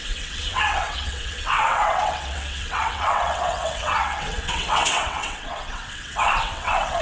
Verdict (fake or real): fake